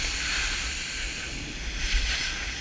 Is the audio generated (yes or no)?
no